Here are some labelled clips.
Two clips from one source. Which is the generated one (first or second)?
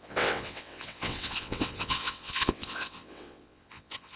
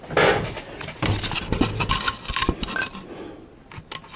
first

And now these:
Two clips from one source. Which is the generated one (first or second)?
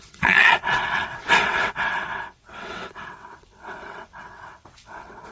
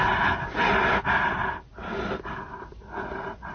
first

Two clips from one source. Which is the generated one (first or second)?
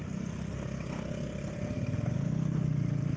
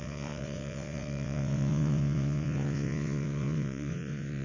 second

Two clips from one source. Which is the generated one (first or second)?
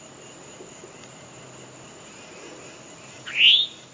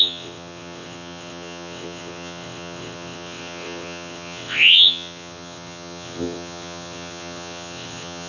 second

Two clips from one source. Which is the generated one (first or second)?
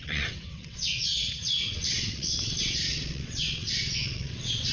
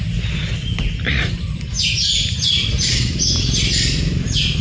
first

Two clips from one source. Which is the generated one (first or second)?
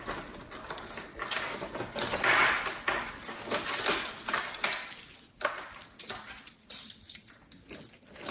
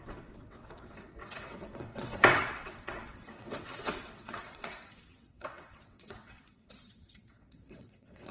second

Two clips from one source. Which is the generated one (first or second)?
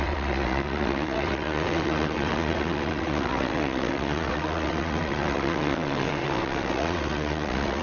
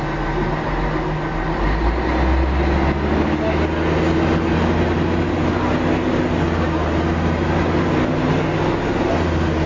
first